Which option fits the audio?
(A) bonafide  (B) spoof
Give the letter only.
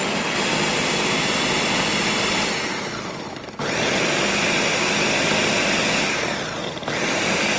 A